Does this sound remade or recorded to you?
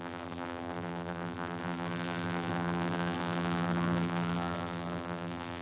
remade